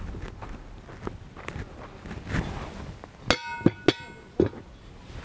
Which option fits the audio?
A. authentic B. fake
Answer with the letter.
A